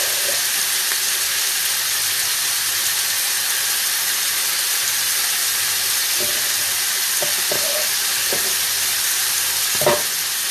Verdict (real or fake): real